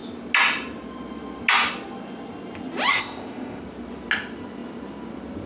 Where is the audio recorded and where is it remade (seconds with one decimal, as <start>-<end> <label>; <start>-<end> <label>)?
0.0-2.9 recorded; 2.9-3.6 remade; 3.6-5.5 recorded